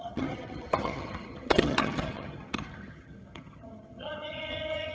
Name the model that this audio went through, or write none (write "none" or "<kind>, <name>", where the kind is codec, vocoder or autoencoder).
vocoder, HiFi-GAN